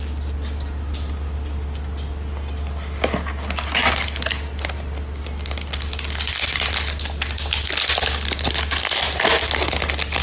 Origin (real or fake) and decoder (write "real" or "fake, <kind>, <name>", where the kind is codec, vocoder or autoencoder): real